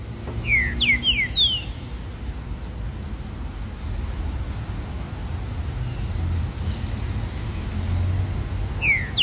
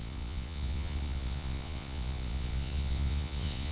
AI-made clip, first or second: second